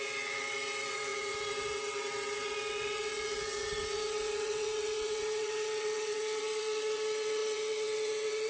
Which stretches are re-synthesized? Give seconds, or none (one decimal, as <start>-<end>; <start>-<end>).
0.0-8.5